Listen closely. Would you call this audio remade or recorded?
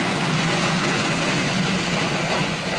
remade